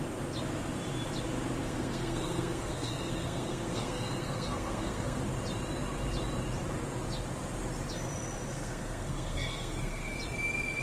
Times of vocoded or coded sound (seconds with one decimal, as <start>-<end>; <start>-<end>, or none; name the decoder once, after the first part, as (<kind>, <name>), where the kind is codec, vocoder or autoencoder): 1.6-5.2 (codec, SNAC); 8.5-10.2